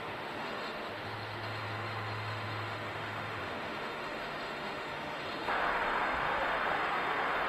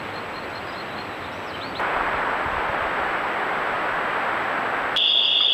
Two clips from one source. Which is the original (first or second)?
second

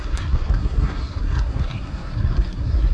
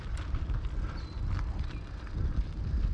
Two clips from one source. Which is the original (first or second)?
second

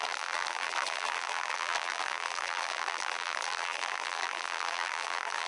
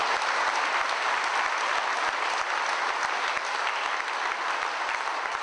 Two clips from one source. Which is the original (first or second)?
second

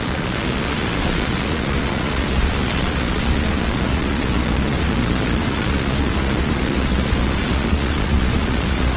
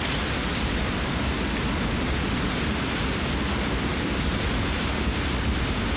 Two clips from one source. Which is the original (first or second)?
second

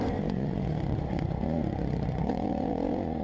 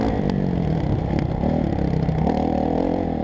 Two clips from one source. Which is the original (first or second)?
second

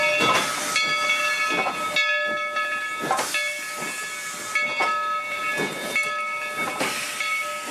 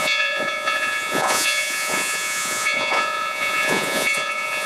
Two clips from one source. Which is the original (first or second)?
first